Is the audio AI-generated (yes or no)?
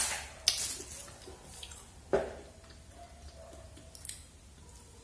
no